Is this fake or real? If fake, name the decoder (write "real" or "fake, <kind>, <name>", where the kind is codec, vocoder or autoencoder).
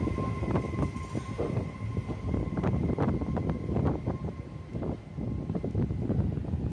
real